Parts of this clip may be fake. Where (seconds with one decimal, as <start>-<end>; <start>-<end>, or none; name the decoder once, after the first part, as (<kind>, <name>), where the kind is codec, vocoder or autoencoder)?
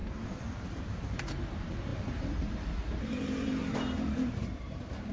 0.5-5.1 (vocoder, BigVGAN v2)